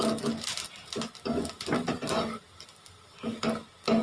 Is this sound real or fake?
real